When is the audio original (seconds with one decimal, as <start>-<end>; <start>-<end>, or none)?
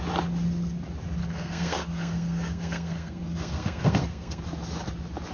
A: 0.0-1.2; 4.4-5.3